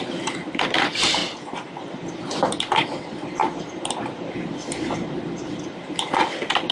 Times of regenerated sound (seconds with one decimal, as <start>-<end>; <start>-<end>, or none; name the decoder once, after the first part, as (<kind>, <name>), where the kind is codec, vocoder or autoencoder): 0.0-1.2 (vocoder, BigVGAN v2); 1.8-6.7